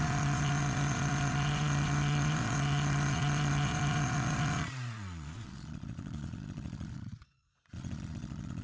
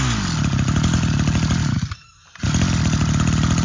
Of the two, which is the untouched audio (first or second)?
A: second